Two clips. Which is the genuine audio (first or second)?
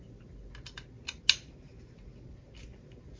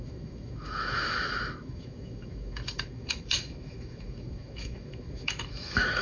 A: first